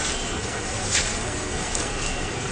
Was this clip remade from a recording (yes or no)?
yes